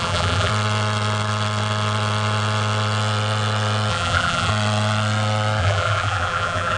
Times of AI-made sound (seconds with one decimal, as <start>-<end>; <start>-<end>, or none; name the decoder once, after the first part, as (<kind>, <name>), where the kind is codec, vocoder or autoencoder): 0.0-0.5 (vocoder, BigVGAN v2); 3.9-4.5; 5.6-6.8